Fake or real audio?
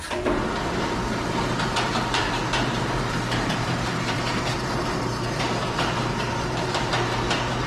fake